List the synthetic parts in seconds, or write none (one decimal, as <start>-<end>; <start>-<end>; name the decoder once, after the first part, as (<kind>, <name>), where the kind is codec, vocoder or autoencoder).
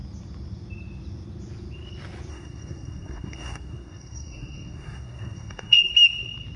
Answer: 2.3-5.9 (codec, SNAC)